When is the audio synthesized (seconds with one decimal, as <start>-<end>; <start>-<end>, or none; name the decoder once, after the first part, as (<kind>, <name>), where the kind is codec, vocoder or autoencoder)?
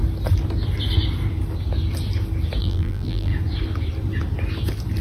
2.6-3.3 (vocoder, BigVGAN v2)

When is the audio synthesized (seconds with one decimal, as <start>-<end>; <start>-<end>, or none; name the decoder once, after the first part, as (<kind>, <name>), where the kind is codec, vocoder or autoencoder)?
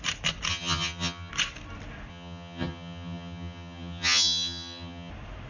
0.5-1.3 (vocoder, HiFi-GAN); 2.1-5.1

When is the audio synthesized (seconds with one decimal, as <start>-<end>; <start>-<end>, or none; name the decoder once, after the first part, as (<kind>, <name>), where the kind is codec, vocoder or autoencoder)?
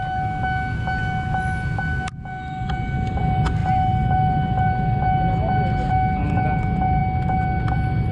none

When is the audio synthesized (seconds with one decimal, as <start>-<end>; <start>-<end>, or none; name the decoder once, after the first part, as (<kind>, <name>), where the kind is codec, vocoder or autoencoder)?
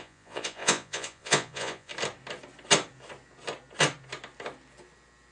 0.0-1.9 (vocoder, Vocos)